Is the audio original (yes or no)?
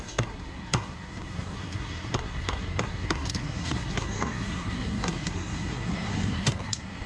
no